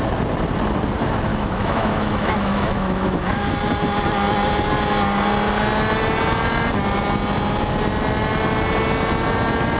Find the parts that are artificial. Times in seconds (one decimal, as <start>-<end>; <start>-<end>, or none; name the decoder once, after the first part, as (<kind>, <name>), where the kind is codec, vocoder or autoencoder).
1.3-3.5 (autoencoder, DAC-VAE)